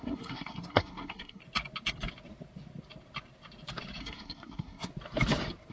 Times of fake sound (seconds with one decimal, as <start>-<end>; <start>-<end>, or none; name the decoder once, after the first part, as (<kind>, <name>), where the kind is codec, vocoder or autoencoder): 0.0-1.4 (codec, SNAC); 4.0-4.9